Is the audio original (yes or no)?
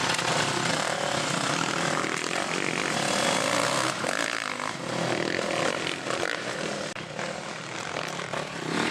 yes